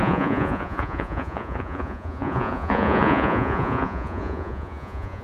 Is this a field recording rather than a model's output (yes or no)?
no